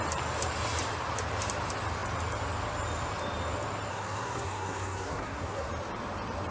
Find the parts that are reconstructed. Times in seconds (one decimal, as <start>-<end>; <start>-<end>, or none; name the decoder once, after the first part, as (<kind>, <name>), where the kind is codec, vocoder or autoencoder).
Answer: 3.9-5.7 (codec, SNAC)